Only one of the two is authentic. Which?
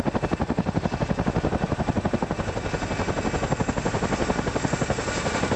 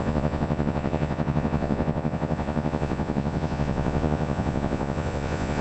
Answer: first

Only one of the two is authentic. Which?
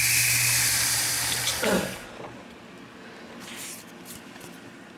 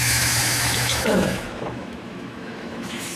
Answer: first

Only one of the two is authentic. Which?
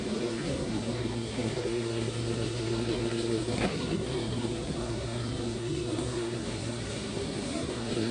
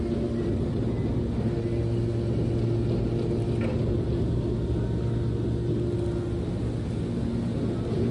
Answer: second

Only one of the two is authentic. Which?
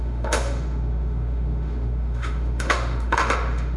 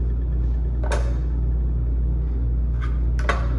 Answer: second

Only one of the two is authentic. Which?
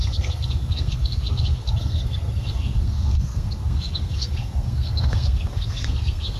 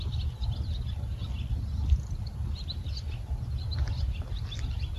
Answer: second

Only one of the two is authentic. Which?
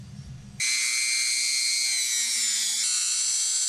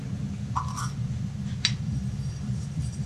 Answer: first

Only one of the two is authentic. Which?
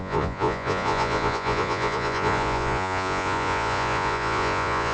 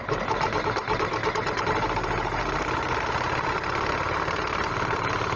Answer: second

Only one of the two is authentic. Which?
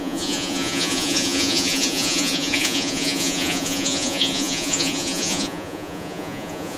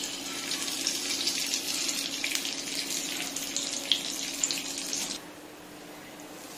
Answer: second